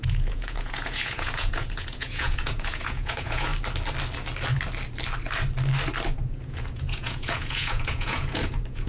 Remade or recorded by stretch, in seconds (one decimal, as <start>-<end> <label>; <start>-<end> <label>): 0.0-3.5 remade; 3.5-6.2 recorded; 6.2-8.9 remade